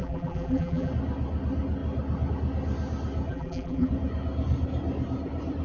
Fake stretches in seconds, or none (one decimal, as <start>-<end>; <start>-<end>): 0.0-0.9; 3.3-3.9